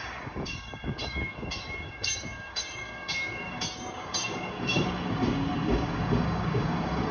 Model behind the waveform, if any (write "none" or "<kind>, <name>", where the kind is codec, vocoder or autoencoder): codec, DAC